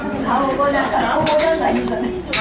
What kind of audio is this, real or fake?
real